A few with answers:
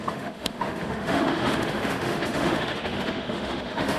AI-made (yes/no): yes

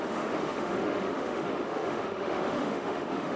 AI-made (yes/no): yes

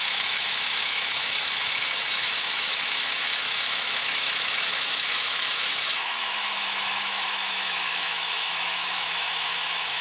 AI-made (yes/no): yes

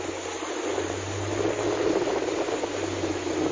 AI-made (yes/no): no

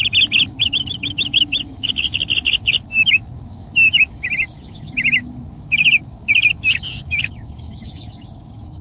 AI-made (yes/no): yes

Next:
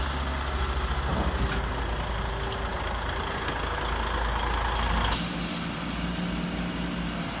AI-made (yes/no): no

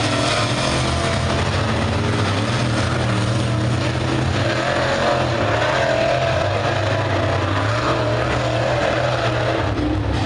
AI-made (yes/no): no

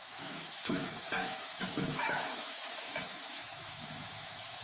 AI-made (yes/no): yes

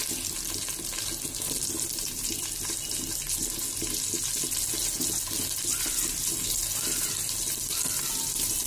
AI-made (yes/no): no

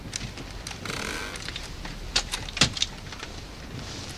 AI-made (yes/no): no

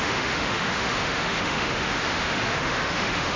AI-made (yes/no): yes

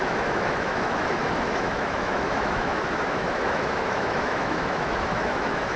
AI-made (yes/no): yes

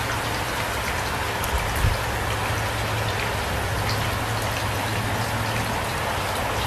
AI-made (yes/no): no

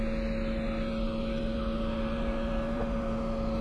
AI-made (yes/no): no